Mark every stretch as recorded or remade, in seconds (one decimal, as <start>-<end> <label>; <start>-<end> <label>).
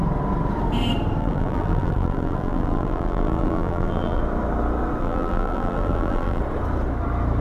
0.0-1.2 recorded; 1.2-4.2 remade; 4.2-5.0 recorded; 5.0-6.4 remade; 6.4-7.4 recorded